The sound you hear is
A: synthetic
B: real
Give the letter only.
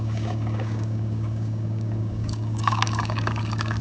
A